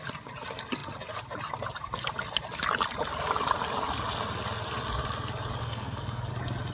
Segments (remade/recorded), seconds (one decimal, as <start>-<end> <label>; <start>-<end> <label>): 0.0-5.6 recorded; 5.6-6.3 remade; 6.3-6.7 recorded